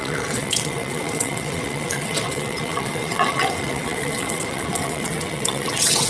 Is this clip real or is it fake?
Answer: fake